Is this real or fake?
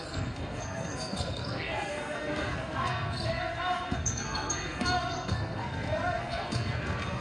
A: fake